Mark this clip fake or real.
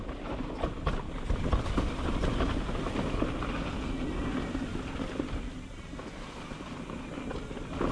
real